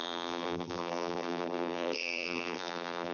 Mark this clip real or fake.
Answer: fake